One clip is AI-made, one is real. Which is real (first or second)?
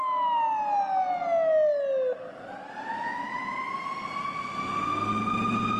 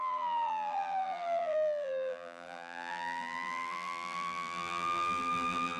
first